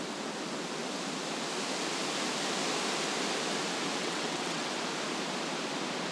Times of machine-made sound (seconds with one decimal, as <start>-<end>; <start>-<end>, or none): 4.0-4.7